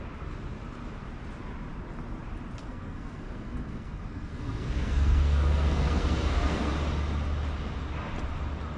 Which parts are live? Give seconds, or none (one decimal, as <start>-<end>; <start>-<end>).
0.0-2.6; 6.7-8.8